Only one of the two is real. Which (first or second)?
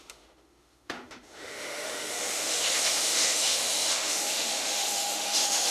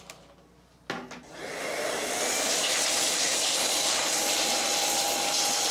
second